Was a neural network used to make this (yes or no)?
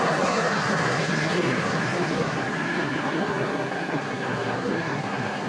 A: yes